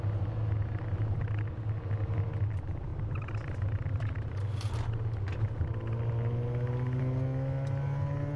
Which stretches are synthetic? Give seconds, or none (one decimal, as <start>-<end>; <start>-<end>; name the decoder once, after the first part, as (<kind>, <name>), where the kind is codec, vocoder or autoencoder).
none